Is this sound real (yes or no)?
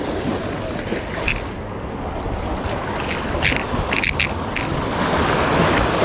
yes